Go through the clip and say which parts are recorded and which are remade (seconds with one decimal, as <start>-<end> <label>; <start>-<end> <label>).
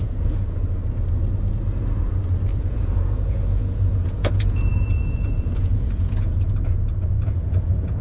0.0-0.8 remade; 0.8-2.6 recorded; 2.6-8.0 remade